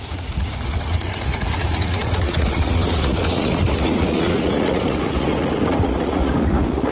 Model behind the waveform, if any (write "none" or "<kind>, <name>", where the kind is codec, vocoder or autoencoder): vocoder, Vocos